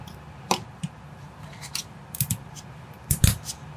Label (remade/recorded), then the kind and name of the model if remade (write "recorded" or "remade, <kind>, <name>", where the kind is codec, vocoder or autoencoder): recorded